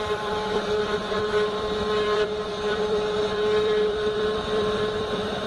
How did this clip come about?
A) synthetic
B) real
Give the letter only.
A